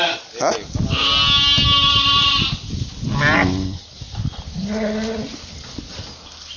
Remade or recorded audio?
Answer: recorded